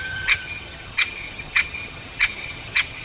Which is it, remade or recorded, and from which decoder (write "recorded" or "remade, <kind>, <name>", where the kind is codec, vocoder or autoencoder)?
remade, vocoder, HiFi-GAN